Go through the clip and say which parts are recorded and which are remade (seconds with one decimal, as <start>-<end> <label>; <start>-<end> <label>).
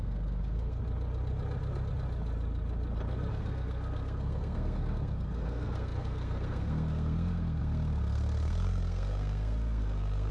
0.0-0.8 remade; 0.8-3.3 recorded; 3.3-10.3 remade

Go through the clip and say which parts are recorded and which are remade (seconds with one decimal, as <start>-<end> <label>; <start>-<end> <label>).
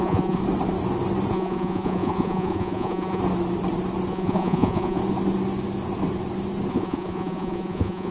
0.0-0.4 remade; 0.4-1.3 recorded; 1.3-3.2 remade; 3.2-4.1 recorded; 4.1-5.0 remade; 5.0-6.7 recorded; 6.7-8.1 remade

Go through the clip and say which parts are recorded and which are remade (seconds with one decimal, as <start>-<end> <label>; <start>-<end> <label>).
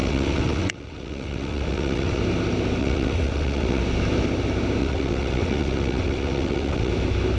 0.0-2.2 remade; 2.2-2.8 recorded; 2.8-3.8 remade; 3.8-4.8 recorded; 4.8-6.9 remade; 6.9-7.4 recorded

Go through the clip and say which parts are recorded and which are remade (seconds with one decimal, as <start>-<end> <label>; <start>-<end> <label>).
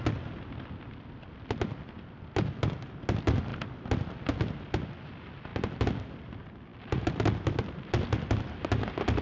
0.0-9.2 recorded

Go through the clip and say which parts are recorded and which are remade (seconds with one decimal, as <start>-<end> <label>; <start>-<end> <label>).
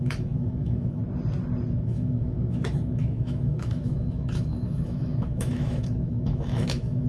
0.0-1.0 remade; 1.0-1.7 recorded; 1.7-7.1 remade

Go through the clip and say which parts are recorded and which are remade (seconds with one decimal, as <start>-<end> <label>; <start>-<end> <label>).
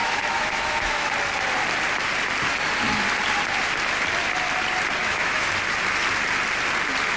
0.0-1.1 remade; 1.1-5.0 recorded; 5.0-5.5 remade; 5.5-7.2 recorded